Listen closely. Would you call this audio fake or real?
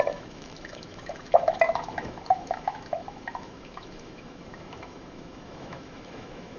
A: fake